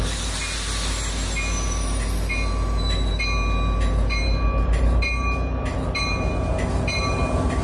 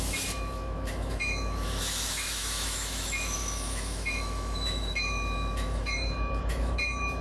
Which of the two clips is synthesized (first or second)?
second